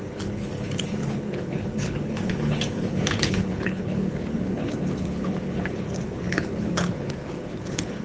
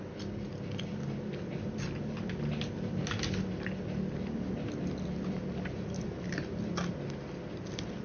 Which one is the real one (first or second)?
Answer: second